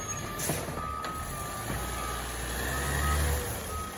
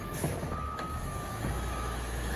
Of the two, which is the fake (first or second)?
second